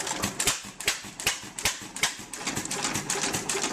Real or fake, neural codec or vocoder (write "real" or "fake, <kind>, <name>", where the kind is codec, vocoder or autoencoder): real